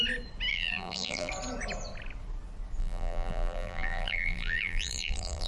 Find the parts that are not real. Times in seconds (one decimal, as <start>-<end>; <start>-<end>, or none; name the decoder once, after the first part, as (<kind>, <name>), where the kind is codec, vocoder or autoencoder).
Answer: 0.5-1.3 (vocoder, BigVGAN v2); 2.8-5.5